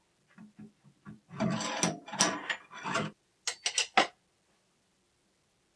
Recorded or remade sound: recorded